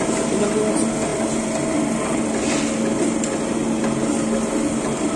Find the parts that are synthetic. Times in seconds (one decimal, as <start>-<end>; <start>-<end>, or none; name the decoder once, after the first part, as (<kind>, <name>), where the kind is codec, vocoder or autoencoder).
none